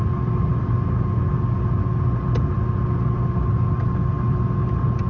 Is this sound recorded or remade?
recorded